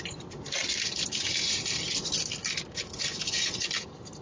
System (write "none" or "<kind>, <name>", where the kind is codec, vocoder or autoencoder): none